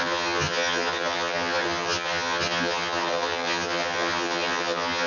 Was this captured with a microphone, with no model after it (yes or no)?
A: no